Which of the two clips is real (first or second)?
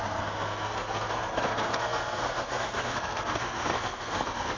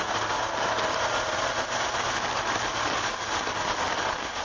second